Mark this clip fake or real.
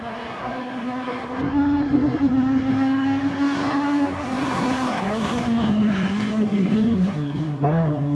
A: fake